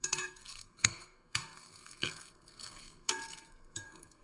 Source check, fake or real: fake